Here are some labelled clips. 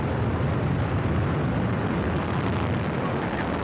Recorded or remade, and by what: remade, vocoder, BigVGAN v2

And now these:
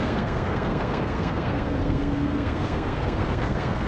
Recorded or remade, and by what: remade, codec, SNAC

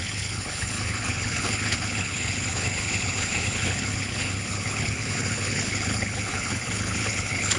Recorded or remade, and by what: remade, codec, HILCodec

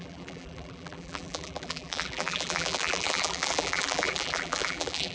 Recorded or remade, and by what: remade, vocoder, BigVGAN v2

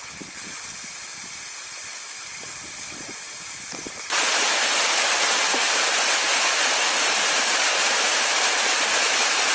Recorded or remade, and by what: recorded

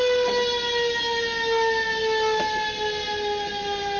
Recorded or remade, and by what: recorded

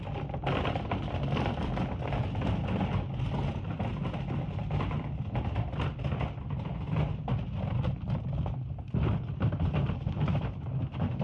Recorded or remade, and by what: recorded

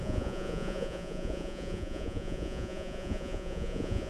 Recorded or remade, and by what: remade, vocoder, Vocos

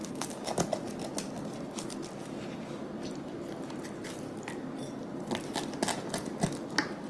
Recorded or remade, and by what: recorded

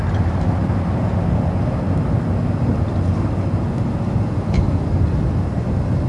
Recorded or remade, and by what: recorded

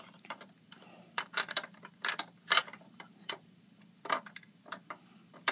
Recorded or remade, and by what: remade, vocoder, BigVGAN v2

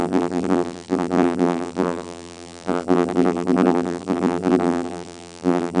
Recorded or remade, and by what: remade, vocoder, BigVGAN v2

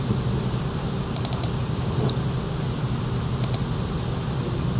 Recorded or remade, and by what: recorded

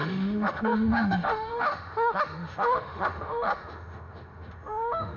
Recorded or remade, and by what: remade, autoencoder, DAC-VAE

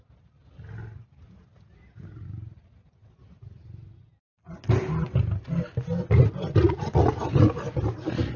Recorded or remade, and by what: recorded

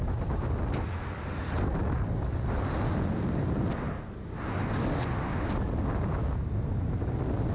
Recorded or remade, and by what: recorded